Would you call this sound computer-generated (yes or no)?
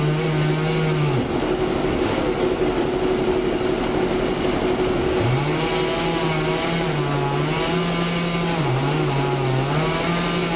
no